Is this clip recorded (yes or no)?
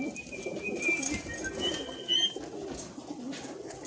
yes